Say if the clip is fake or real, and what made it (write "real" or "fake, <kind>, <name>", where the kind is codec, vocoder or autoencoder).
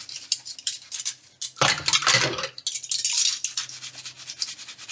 real